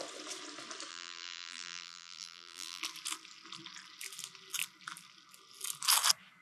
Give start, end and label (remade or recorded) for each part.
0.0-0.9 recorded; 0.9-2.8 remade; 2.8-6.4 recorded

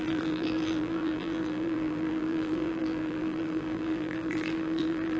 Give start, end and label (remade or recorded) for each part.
0.0-5.2 remade

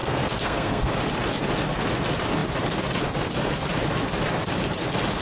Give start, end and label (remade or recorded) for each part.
0.0-1.0 remade; 1.0-5.2 recorded

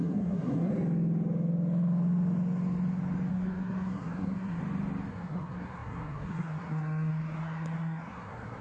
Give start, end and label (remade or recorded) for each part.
0.0-0.7 remade; 0.7-3.3 recorded; 3.3-4.6 remade; 4.6-5.1 recorded; 5.1-8.6 remade

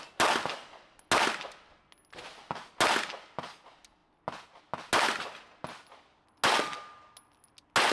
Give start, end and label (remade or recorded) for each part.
0.0-7.9 recorded

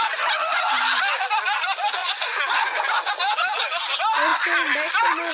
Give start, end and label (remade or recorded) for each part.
0.0-2.0 recorded; 2.0-3.1 remade; 3.1-5.3 recorded